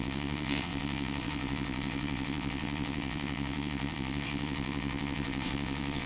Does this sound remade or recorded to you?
remade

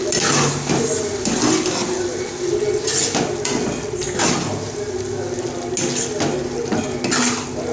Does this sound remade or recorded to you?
recorded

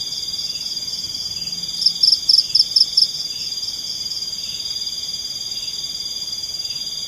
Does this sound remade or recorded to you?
recorded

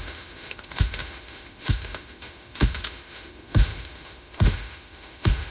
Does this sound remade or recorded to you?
remade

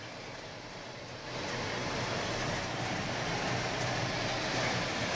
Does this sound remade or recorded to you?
recorded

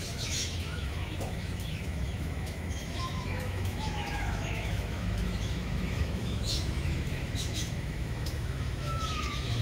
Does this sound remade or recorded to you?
remade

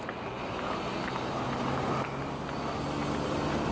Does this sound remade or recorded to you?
recorded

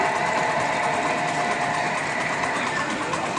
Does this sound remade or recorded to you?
recorded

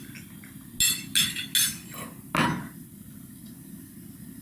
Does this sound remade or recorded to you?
recorded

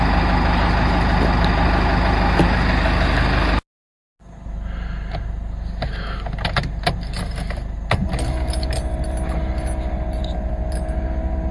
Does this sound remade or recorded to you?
recorded